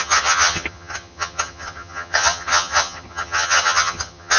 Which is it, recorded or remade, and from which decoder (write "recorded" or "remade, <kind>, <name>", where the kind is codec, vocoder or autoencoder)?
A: remade, vocoder, HiFi-GAN